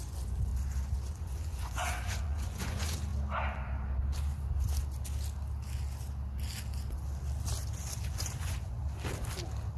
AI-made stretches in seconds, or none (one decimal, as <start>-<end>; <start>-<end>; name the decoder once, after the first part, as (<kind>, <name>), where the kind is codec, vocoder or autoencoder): 0.0-0.5 (vocoder, Vocos); 1.1-3.1; 8.1-8.8